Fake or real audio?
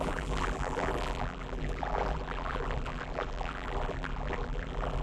fake